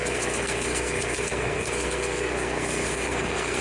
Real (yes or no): no